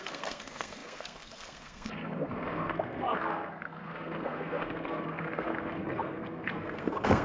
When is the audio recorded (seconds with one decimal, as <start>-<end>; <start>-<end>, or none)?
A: none